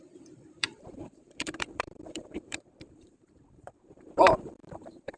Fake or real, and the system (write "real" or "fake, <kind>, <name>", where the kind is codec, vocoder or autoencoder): fake, vocoder, BigVGAN v2